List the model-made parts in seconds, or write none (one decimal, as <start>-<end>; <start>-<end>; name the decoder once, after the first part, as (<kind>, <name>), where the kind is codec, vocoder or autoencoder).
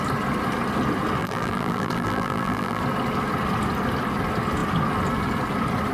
1.2-2.8 (vocoder, BigVGAN v2)